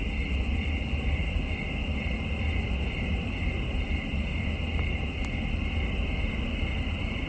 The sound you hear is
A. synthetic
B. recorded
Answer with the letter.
B